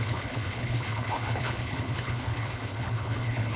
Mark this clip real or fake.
fake